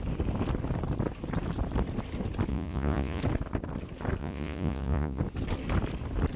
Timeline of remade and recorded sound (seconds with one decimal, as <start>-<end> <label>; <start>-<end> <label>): 0.0-2.5 recorded; 2.5-3.2 remade; 3.2-4.2 recorded; 4.2-5.2 remade; 5.2-6.4 recorded